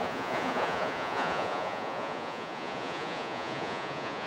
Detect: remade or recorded remade